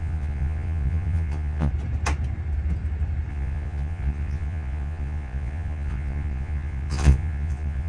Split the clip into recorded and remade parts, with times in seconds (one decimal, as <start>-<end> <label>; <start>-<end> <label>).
0.0-1.7 remade; 1.7-3.3 recorded; 3.3-7.9 remade